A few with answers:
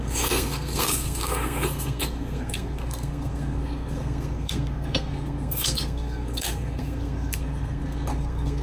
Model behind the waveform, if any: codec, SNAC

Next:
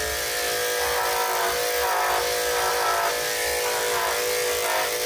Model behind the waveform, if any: none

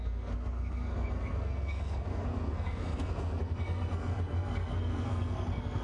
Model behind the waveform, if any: codec, SNAC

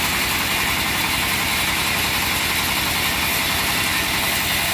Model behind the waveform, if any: none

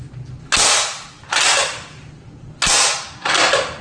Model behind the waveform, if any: none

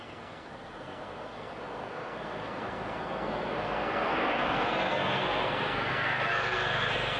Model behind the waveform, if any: codec, SNAC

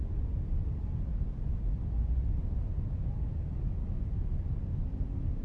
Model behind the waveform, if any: none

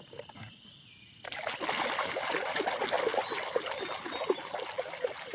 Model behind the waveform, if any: none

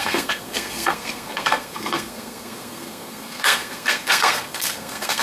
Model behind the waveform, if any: codec, SNAC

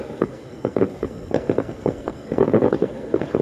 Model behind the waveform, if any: codec, SNAC